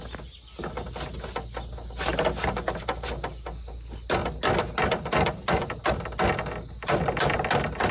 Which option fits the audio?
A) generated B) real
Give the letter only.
B